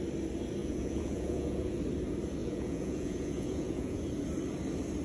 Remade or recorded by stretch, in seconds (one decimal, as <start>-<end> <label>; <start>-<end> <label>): 0.0-0.6 recorded; 0.6-1.8 remade; 1.8-2.4 recorded; 2.4-4.0 remade; 4.0-5.0 recorded